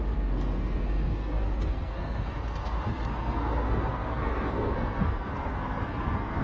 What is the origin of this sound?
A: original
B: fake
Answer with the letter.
B